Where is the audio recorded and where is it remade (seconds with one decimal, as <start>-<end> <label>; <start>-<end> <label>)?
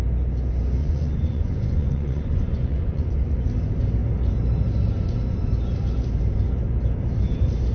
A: 0.0-0.8 recorded; 0.8-3.5 remade; 3.5-7.7 recorded